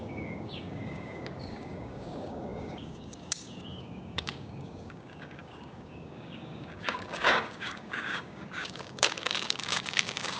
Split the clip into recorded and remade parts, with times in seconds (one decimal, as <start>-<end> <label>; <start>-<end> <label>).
0.0-10.4 remade